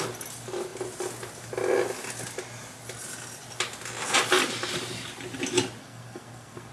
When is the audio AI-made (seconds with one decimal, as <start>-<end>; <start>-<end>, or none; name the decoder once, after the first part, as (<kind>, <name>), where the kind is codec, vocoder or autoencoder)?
5.8-6.7 (codec, SNAC)